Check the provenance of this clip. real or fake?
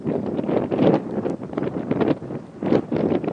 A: fake